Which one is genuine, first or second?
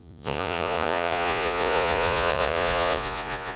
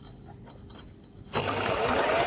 second